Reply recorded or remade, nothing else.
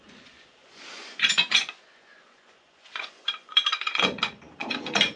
remade